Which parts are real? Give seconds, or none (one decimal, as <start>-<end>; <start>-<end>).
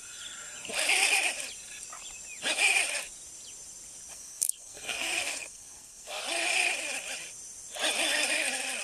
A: 0.0-4.1; 6.2-8.8